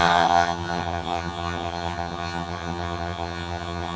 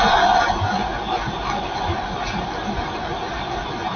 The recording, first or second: second